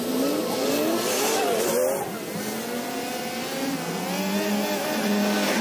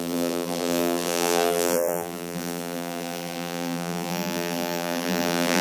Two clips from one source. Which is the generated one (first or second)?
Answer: second